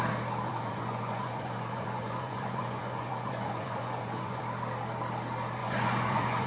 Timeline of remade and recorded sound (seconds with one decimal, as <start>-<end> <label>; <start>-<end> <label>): 0.0-0.5 recorded; 0.5-4.4 remade; 4.4-5.6 recorded; 5.6-6.5 remade